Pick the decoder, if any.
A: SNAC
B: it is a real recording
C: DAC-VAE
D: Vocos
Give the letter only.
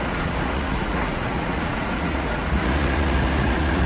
D